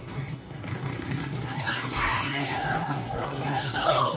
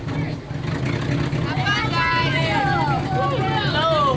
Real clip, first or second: second